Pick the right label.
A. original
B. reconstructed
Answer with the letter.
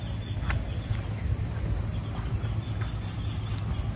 A